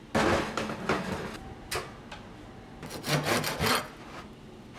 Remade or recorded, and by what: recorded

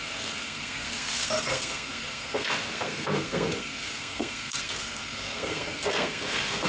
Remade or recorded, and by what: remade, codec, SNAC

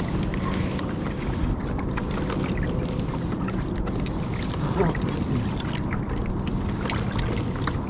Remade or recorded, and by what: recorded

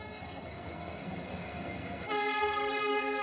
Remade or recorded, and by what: remade, codec, SNAC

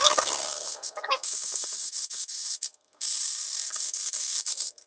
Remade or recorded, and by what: remade, codec, SNAC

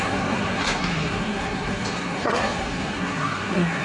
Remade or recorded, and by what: remade, codec, SNAC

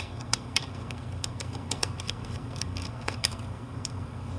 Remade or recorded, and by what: remade, codec, SNAC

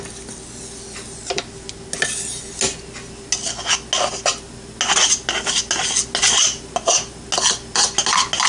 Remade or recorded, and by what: recorded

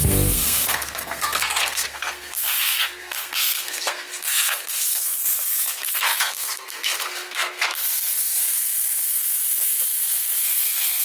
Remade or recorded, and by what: remade, codec, SNAC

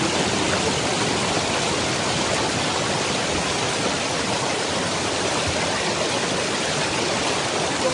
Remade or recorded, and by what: recorded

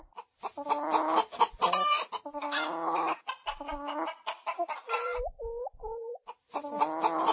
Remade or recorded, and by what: recorded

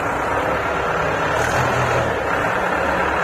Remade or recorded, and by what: recorded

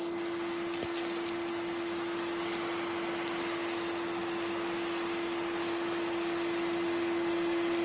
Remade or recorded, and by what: recorded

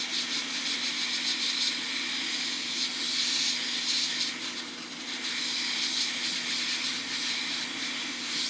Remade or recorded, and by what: recorded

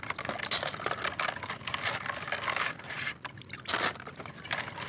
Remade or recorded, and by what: recorded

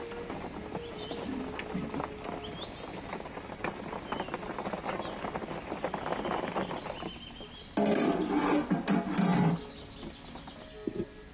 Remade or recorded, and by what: recorded